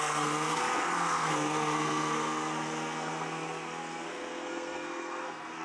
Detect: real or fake fake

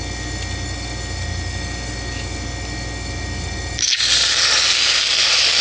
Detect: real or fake real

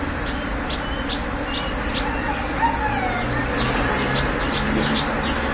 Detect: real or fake real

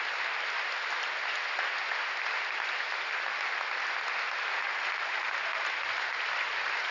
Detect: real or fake real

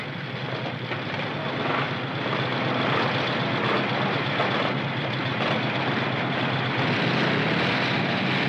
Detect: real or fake real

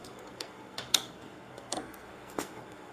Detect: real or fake fake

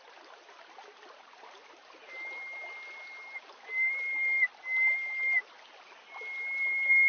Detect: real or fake real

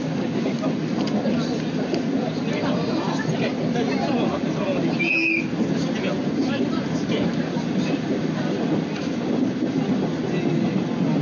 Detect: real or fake real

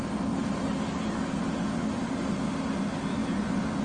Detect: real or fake real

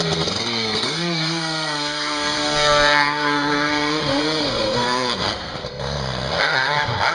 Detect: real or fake fake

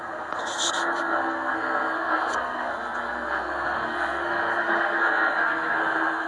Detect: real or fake fake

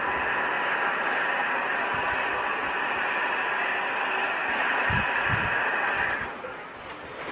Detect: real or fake real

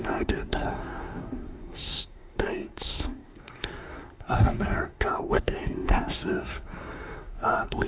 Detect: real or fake fake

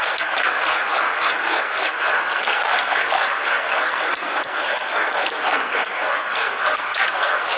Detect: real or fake fake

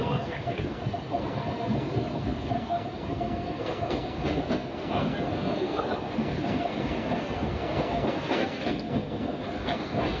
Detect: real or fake fake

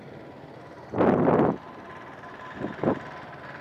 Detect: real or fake real